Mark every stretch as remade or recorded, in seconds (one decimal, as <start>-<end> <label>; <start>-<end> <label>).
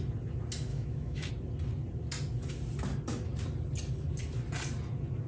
0.0-0.7 recorded; 0.7-1.3 remade; 1.3-5.3 recorded